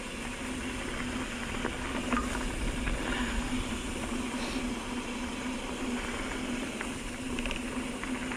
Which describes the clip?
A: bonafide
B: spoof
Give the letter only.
A